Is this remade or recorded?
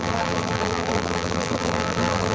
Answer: remade